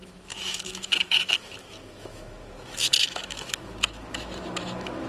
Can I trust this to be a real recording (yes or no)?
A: no